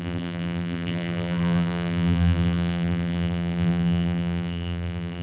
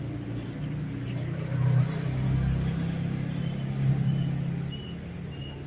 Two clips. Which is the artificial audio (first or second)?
first